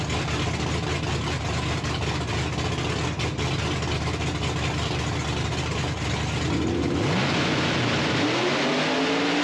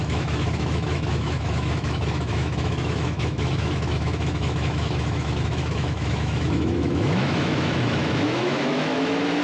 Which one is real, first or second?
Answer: first